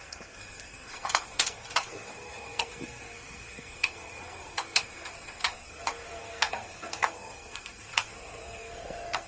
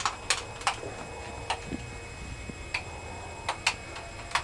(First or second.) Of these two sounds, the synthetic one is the first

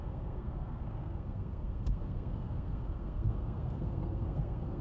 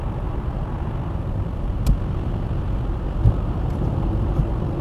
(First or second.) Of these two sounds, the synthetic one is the first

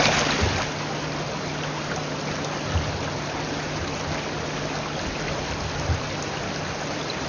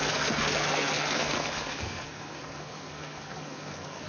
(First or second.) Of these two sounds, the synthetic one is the second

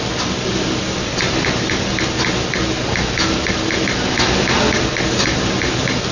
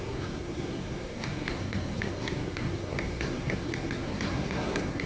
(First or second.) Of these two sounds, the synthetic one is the second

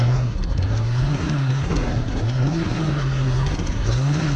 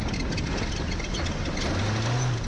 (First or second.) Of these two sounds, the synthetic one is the first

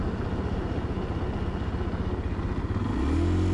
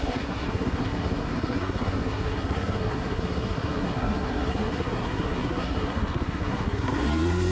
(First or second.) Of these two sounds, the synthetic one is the second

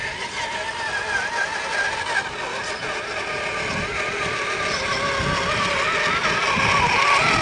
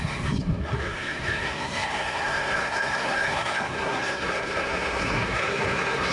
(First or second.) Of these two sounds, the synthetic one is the second